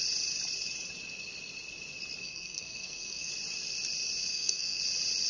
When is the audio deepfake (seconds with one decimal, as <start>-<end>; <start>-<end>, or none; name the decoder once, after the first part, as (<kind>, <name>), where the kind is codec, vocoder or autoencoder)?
2.2-3.3 (codec, SNAC); 4.3-4.8

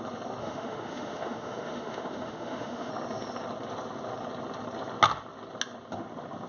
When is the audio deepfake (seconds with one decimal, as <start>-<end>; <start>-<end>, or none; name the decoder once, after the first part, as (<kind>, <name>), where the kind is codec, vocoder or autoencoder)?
0.4-2.9 (autoencoder, DAC-VAE)